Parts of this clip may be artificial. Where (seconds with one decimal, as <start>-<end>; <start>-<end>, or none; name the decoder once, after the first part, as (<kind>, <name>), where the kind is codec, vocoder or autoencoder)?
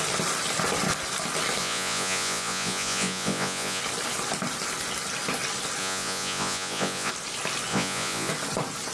1.6-3.8 (vocoder, Vocos); 5.8-7.1; 7.7-8.3